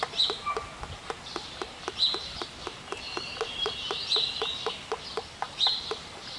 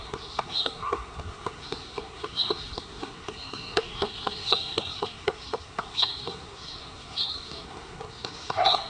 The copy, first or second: second